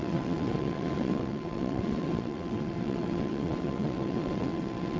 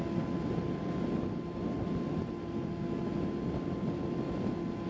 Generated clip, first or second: first